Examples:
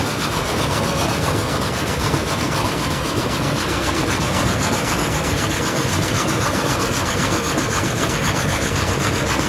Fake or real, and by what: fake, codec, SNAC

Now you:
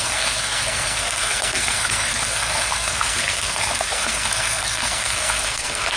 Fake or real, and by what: fake, codec, SNAC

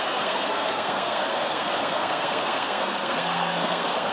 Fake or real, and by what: fake, codec, SNAC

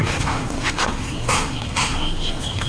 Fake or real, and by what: fake, codec, SNAC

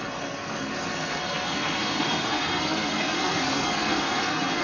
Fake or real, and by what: fake, codec, SNAC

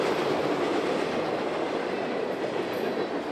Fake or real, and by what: real